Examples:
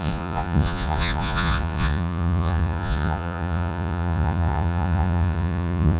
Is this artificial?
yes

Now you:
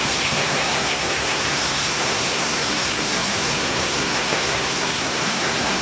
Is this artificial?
yes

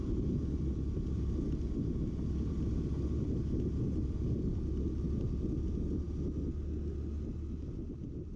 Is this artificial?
no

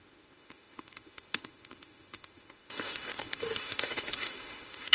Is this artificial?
yes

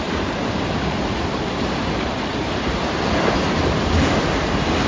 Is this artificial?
no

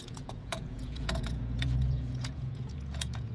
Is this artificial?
yes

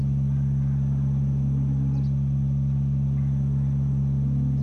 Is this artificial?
no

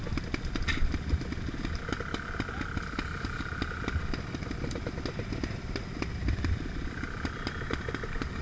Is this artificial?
no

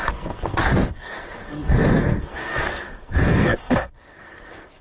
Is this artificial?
yes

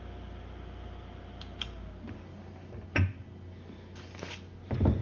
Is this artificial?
no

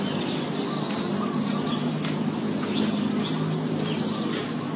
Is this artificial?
no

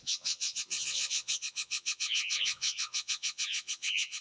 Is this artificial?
yes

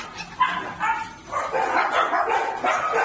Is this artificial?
no